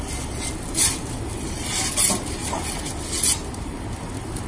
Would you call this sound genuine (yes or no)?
yes